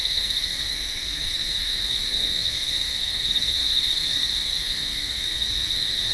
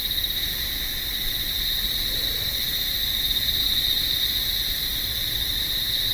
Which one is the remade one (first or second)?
first